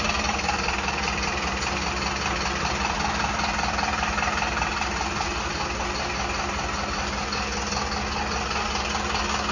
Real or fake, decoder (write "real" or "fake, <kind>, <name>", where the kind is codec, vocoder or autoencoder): real